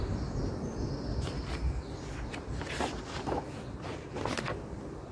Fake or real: real